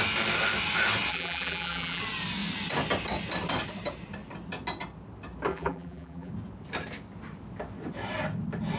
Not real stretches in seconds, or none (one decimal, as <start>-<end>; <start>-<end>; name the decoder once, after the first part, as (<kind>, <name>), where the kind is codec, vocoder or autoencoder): 1.1-2.0 (vocoder, BigVGAN v2); 5.5-6.3